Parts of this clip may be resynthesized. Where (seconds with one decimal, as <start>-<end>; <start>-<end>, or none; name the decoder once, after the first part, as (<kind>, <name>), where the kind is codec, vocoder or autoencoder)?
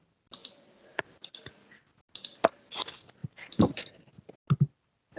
3.2-4.1 (vocoder, BigVGAN v2)